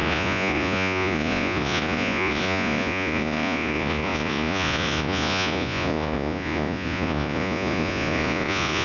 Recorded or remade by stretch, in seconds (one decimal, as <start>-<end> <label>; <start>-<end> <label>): 0.0-8.8 remade